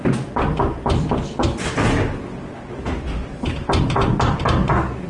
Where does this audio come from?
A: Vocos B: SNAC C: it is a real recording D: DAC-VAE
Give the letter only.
C